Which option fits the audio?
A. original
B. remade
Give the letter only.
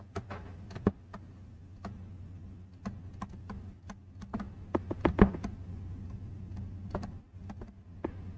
A